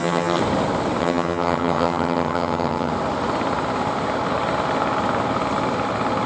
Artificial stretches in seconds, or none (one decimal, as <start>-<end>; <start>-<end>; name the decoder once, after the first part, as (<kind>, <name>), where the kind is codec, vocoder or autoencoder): 0.0-0.4 (vocoder, HiFi-GAN); 1.0-2.9